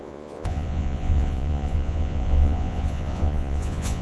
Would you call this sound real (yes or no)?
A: no